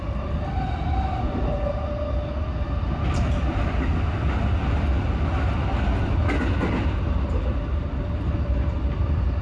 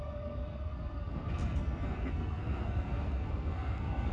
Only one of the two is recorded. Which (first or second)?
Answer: first